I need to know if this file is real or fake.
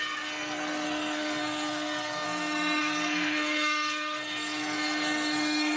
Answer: fake